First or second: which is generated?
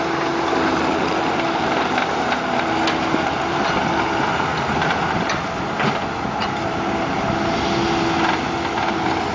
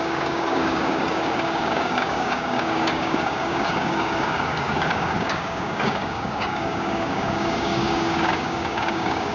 second